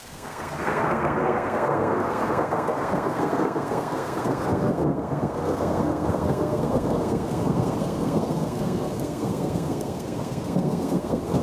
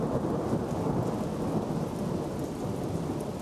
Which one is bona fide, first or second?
second